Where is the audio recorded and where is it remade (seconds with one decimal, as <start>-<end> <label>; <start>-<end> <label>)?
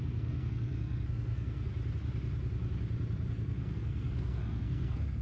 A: 0.0-1.7 remade; 1.7-3.3 recorded; 3.3-5.2 remade